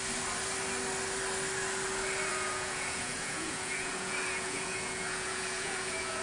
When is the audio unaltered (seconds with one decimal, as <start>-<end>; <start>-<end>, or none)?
0.0-2.3